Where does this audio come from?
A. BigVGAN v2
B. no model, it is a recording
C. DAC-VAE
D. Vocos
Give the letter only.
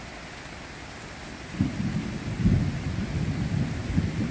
B